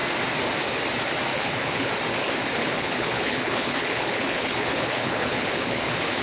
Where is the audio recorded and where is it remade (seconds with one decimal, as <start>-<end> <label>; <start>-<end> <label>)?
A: 0.0-1.3 recorded; 1.3-1.9 remade; 1.9-2.6 recorded; 2.6-6.2 remade